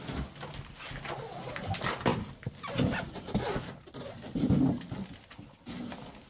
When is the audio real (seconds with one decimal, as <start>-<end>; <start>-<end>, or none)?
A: 0.0-6.3